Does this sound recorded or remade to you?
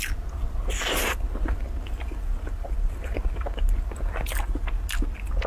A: recorded